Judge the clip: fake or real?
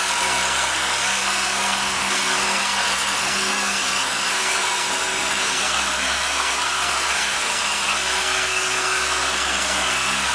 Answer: fake